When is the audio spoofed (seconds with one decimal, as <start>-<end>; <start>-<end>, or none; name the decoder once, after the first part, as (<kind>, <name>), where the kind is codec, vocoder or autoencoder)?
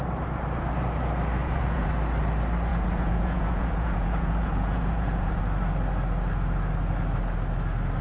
1.4-1.9 (vocoder, Vocos); 2.7-5.4